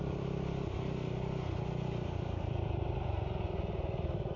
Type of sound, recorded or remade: recorded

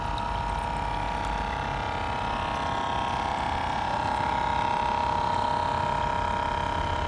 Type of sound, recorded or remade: recorded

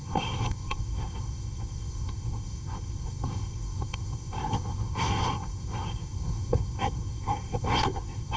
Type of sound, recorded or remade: remade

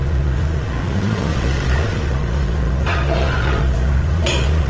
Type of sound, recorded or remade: remade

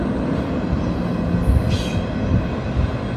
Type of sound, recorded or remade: recorded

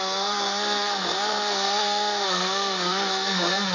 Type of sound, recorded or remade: remade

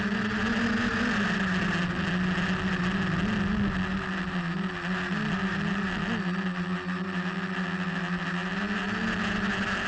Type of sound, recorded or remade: recorded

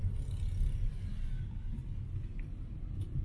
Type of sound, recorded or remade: recorded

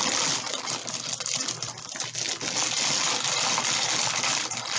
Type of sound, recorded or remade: recorded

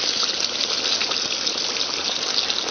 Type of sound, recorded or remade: recorded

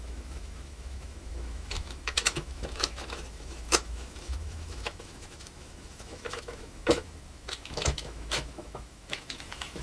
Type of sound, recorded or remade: remade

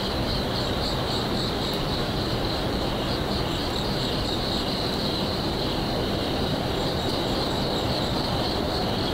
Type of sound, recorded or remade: remade